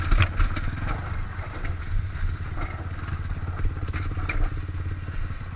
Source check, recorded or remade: recorded